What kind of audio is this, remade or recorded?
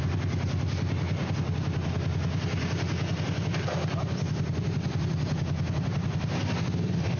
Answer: recorded